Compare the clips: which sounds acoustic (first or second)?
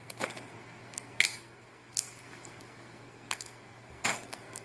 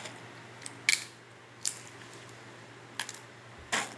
second